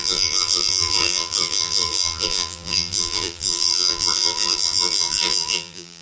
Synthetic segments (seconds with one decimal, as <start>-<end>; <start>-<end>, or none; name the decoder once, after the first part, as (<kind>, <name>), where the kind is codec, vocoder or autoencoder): 0.0-6.0 (vocoder, BigVGAN v2)